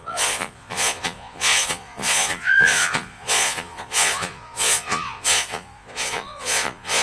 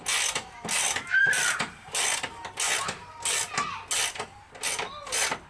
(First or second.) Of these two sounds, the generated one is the first